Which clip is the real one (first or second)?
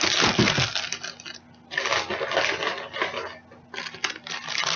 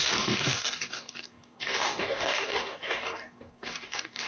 first